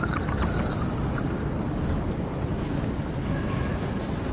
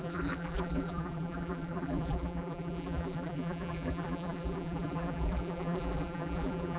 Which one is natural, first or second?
first